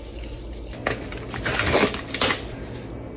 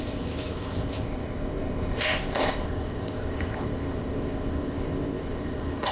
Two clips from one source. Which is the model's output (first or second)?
second